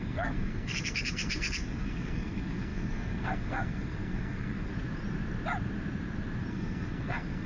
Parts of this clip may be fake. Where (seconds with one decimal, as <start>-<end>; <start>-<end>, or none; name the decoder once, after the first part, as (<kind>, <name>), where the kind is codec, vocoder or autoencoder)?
0.0-4.7 (codec, SNAC); 6.5-7.5